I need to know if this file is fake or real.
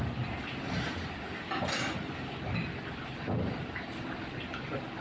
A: real